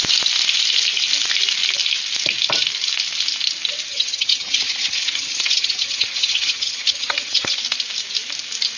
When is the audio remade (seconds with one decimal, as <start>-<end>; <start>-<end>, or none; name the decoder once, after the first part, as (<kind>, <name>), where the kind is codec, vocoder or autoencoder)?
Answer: 3.9-7.6 (vocoder, HiFi-GAN)